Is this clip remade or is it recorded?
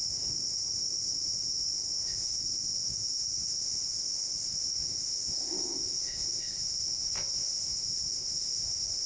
remade